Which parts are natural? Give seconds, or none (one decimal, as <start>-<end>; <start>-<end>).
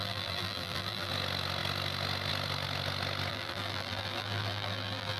1.1-3.3